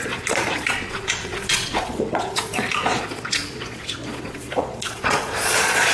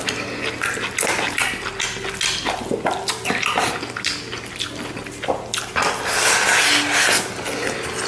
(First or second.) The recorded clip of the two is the second